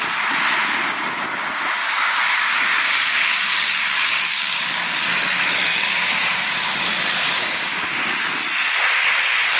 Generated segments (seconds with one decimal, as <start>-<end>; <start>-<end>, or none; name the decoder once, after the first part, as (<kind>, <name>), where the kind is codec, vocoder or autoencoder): 1.8-5.1 (codec, DAC); 5.7-8.1